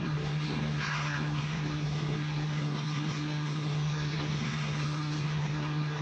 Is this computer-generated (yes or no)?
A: yes